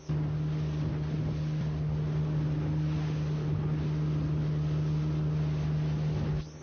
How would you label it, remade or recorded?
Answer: recorded